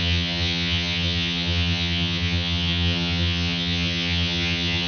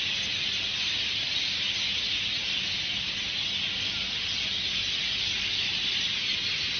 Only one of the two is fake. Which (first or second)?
first